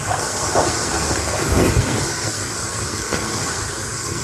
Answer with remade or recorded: remade